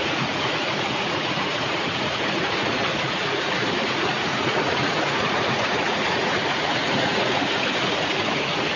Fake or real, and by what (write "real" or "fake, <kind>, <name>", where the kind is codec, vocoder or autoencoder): fake, vocoder, Vocos